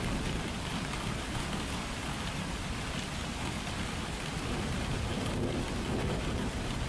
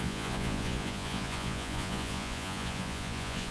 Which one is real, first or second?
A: first